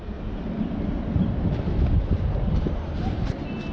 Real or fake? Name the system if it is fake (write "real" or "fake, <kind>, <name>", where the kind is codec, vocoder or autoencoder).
real